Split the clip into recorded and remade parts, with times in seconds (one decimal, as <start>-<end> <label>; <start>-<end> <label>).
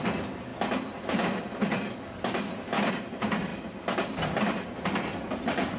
0.0-0.5 remade; 0.5-2.9 recorded; 2.9-5.8 remade